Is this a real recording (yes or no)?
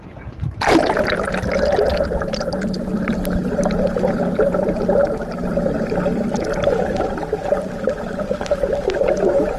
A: yes